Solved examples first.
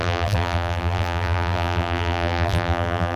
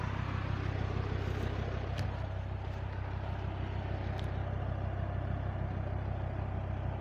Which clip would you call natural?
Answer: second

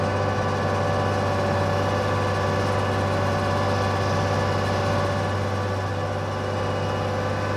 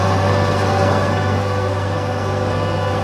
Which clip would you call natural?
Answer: first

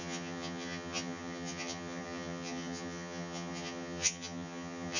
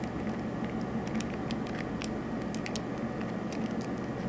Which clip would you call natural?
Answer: second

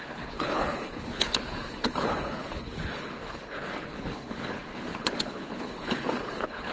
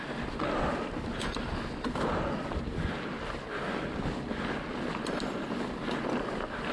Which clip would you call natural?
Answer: second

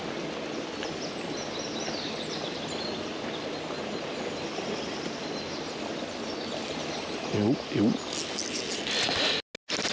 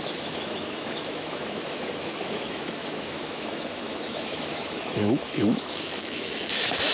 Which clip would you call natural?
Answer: first